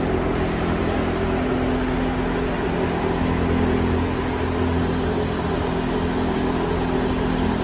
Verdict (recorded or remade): recorded